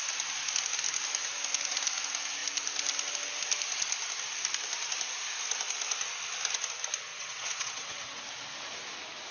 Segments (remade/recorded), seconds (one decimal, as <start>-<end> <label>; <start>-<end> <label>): 0.0-7.1 recorded; 7.1-8.2 remade; 8.2-9.3 recorded